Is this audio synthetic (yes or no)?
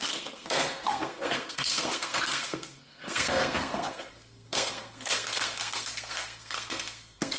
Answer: yes